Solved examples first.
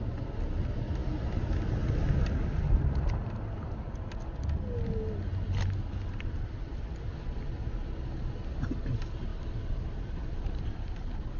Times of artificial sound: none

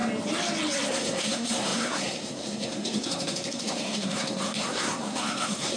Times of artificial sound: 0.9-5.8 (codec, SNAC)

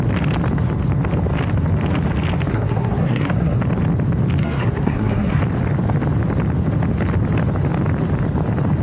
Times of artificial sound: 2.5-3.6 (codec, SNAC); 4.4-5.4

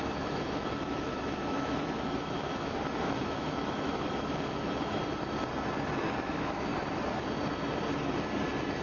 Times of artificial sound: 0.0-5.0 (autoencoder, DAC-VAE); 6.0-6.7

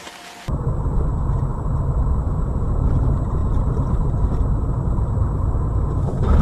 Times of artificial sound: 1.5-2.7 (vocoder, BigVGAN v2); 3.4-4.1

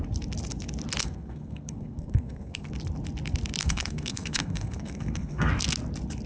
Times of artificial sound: 1.0-2.7 (codec, SNAC); 3.6-5.5

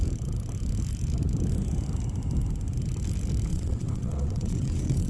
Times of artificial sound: 3.5-5.1 (vocoder, WaveNeXt)